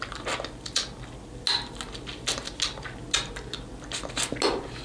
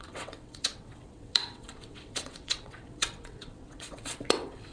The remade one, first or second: second